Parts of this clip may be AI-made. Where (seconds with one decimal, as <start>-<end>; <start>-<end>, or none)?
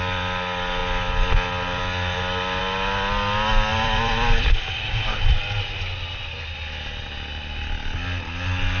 3.7-5.4